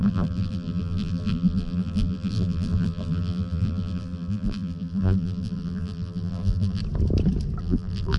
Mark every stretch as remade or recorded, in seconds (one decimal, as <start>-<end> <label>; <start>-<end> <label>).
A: 0.0-6.8 remade; 6.8-7.6 recorded; 7.6-8.2 remade